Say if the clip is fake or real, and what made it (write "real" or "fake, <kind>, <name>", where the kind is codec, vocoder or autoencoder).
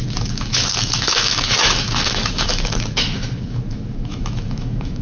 fake, autoencoder, DAC-VAE